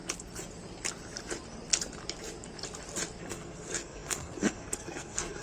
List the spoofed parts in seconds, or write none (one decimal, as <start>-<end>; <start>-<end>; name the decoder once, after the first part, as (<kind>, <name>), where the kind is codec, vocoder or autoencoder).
3.2-5.4 (codec, SNAC)